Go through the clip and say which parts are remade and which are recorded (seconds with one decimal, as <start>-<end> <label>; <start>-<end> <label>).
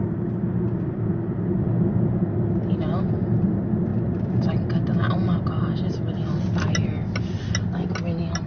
0.0-8.5 recorded